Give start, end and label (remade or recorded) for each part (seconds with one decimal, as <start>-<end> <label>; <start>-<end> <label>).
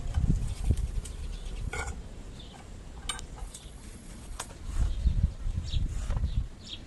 0.0-0.4 recorded; 0.4-1.9 remade; 1.9-3.4 recorded; 3.4-4.5 remade; 4.5-6.9 recorded